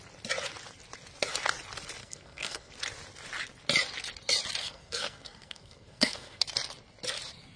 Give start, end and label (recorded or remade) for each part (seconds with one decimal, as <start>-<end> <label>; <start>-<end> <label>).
0.0-2.0 recorded; 2.0-2.7 remade; 2.7-4.6 recorded; 4.6-6.4 remade; 6.4-7.6 recorded